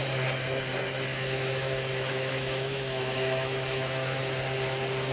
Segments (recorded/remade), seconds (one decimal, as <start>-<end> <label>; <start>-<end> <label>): 0.0-1.1 recorded; 1.1-4.2 remade; 4.2-5.1 recorded